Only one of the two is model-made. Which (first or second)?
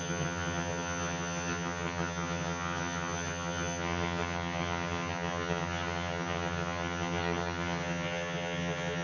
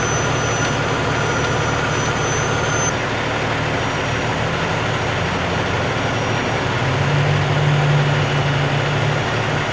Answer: first